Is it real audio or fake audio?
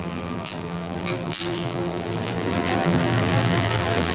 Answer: fake